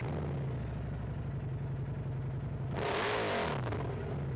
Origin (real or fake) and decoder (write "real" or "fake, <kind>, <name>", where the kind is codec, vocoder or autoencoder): real